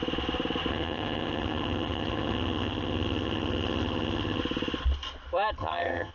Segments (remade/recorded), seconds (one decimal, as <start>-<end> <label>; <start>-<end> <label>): 0.0-0.7 recorded; 0.7-4.4 remade; 4.4-5.6 recorded; 5.6-6.1 remade